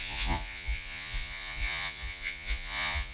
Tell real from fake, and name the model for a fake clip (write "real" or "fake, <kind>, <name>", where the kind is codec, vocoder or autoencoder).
fake, vocoder, Vocos